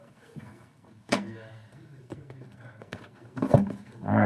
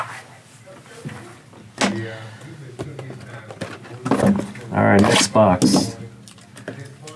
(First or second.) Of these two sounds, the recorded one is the second